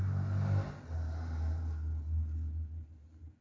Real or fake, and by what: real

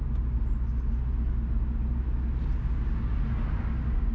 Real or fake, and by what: real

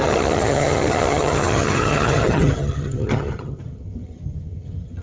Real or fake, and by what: fake, vocoder, HiFi-GAN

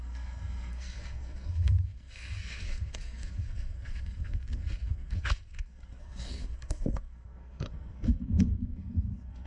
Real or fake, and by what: fake, codec, SNAC